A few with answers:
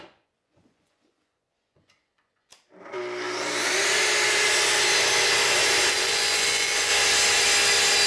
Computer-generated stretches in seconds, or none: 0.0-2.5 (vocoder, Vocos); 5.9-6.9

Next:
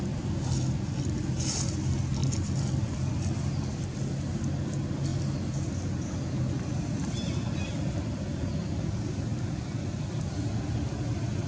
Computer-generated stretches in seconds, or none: none

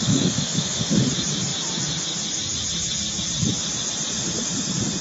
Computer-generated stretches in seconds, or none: 0.0-1.1 (autoencoder, DAC-VAE)

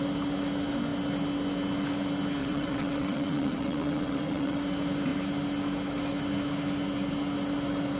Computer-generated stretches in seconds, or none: 2.4-4.6 (vocoder, WaveNeXt)

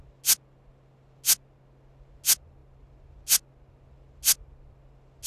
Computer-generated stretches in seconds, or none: none

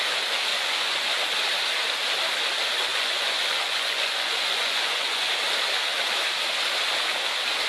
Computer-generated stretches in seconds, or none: 0.5-1.2 (vocoder, Vocos); 2.9-5.2